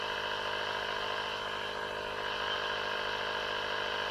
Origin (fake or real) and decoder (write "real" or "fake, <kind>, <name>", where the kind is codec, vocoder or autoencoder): real